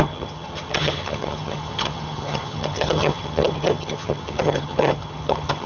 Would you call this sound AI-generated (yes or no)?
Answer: yes